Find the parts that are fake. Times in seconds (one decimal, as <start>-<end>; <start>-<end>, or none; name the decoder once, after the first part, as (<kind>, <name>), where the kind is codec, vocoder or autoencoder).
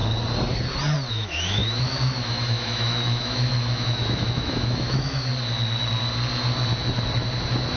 1.1-5.3 (autoencoder, DAC-VAE)